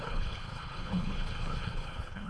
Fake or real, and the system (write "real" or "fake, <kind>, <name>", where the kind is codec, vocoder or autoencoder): fake, codec, HILCodec